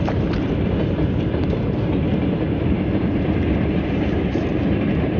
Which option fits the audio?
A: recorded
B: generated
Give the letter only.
A